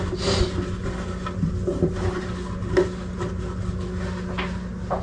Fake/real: real